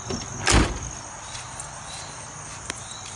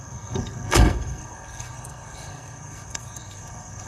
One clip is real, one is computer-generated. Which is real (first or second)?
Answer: first